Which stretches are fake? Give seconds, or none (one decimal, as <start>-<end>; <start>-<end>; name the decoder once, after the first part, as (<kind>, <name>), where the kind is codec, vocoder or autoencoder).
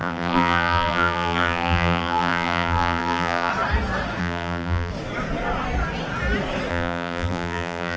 0.0-3.5 (vocoder, BigVGAN v2); 4.2-4.9; 6.7-8.0